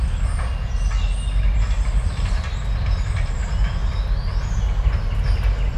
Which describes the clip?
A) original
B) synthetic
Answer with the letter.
A